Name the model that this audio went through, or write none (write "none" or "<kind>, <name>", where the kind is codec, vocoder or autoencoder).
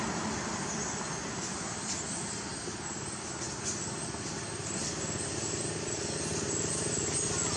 none